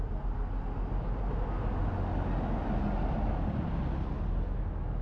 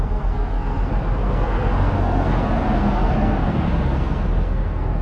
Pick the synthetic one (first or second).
second